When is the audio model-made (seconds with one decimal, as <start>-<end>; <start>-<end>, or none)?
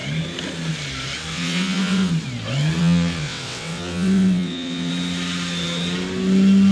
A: 1.3-2.1; 2.8-4.9